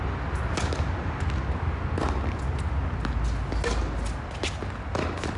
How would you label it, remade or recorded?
recorded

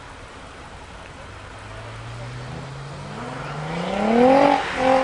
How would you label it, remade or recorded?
recorded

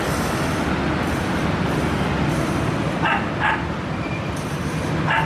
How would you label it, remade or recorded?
recorded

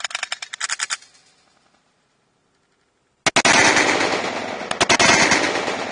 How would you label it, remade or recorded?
recorded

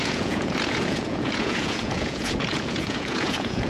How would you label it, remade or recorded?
remade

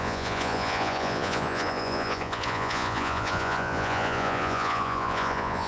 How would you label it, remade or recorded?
remade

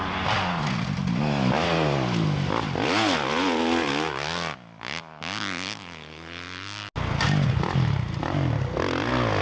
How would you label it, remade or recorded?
recorded